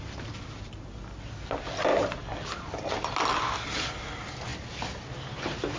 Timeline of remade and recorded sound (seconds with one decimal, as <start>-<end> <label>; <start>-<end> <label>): 0.0-5.8 recorded